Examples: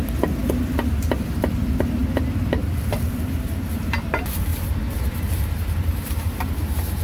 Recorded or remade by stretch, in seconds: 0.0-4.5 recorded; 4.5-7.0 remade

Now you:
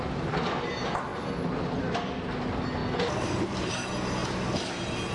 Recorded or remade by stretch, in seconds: 0.0-5.1 recorded

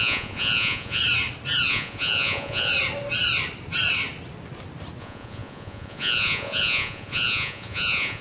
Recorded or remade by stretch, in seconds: 0.0-1.0 remade; 1.0-1.7 recorded; 1.7-2.7 remade; 2.7-5.0 recorded; 5.0-8.2 remade